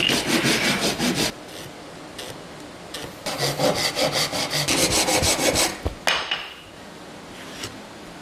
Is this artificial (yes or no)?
no